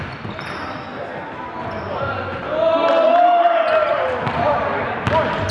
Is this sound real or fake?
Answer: real